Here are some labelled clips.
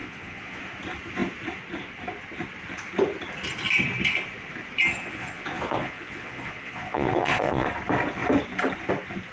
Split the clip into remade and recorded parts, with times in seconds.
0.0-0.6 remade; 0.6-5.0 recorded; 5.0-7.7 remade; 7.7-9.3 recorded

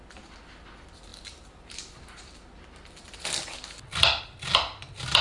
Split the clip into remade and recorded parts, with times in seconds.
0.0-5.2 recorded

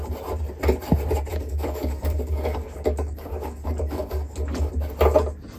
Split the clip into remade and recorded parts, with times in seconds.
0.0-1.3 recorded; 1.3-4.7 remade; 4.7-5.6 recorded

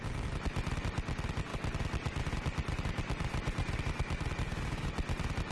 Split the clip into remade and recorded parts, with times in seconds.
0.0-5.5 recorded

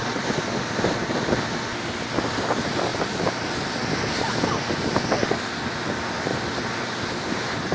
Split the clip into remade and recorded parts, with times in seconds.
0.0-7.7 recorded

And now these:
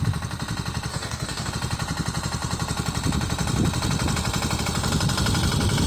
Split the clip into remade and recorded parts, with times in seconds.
0.0-0.9 recorded; 0.9-1.5 remade; 1.5-5.9 recorded

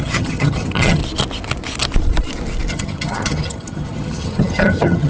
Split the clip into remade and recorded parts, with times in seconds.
0.0-1.0 remade; 1.0-2.7 recorded; 2.7-5.1 remade

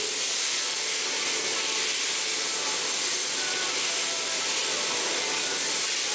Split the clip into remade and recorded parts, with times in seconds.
0.0-4.6 recorded; 4.6-5.4 remade; 5.4-6.1 recorded